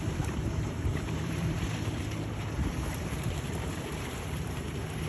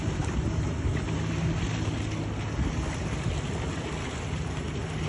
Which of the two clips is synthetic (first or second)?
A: first